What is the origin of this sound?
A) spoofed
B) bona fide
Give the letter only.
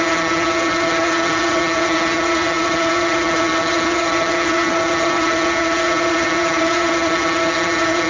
A